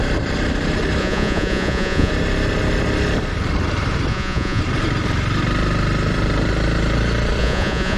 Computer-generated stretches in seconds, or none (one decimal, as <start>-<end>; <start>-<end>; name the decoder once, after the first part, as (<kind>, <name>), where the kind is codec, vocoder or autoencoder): 1.0-2.1 (vocoder, Vocos); 4.1-4.6; 7.4-8.0